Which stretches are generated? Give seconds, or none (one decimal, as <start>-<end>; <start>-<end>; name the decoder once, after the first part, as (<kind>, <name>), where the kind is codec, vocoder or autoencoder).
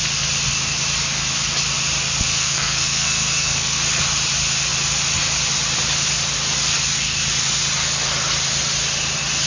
2.3-3.8 (codec, SNAC)